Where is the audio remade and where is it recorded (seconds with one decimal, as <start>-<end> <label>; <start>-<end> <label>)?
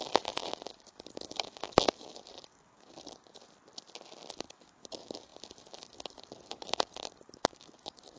0.0-3.4 remade; 3.4-4.3 recorded; 4.3-8.2 remade